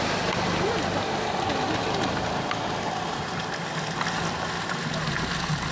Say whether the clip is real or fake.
real